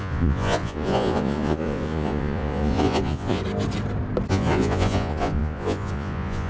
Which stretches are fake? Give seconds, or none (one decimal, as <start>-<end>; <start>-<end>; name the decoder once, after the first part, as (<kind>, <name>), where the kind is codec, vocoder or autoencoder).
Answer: 0.0-3.4 (vocoder, Vocos); 4.3-6.5